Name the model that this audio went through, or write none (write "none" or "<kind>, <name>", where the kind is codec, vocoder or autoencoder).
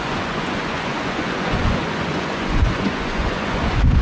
vocoder, Vocos